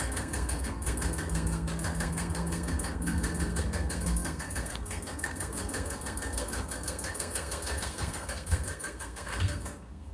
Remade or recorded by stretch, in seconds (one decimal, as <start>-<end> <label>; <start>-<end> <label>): 0.0-10.1 remade